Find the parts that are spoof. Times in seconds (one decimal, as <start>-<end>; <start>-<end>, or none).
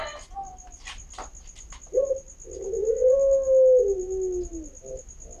none